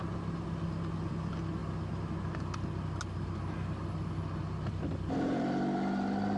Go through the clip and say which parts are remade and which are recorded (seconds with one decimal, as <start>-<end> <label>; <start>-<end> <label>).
0.0-6.4 recorded